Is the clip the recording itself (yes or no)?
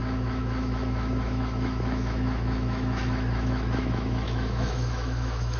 no